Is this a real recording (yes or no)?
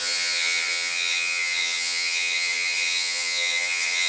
no